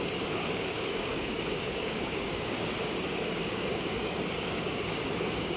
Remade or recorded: remade